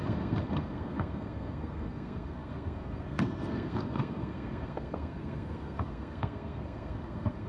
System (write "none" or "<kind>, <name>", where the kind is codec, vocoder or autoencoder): codec, SNAC